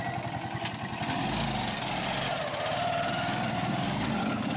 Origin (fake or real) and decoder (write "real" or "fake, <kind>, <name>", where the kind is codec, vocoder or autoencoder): real